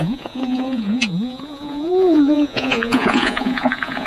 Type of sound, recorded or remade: remade